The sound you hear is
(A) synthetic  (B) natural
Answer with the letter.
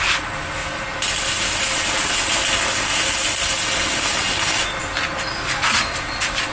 B